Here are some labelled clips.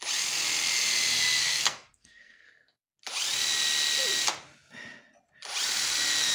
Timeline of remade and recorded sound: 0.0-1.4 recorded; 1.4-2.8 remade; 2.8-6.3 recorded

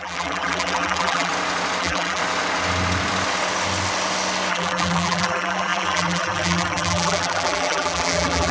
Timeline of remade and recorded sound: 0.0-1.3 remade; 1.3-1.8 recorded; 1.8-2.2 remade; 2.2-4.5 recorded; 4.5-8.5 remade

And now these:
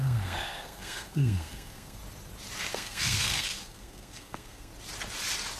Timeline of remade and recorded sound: 0.0-2.0 remade; 2.0-2.7 recorded; 2.7-4.7 remade; 4.7-5.6 recorded

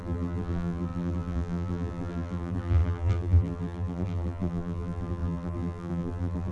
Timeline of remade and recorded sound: 0.0-6.5 remade

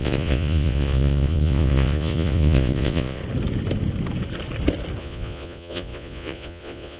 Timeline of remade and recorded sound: 0.0-3.2 remade; 3.2-5.0 recorded; 5.0-7.0 remade

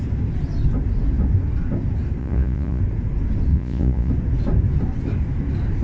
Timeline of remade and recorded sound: 0.0-2.2 recorded; 2.2-2.8 remade; 2.8-3.5 recorded; 3.5-4.1 remade; 4.1-5.8 recorded